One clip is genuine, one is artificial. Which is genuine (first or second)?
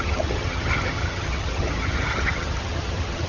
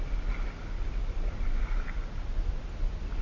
second